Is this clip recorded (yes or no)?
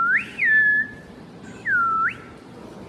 yes